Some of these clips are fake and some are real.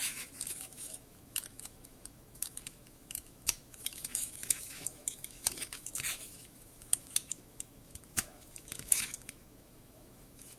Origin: fake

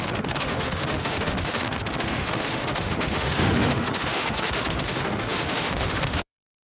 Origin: fake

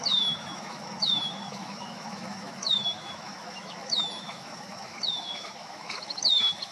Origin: fake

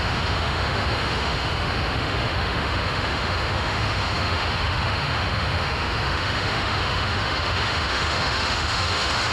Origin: fake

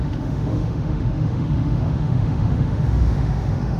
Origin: fake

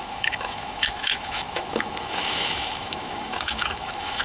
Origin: fake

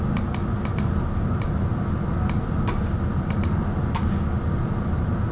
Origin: real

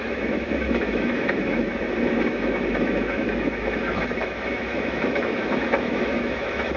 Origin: fake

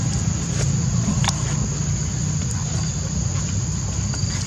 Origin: real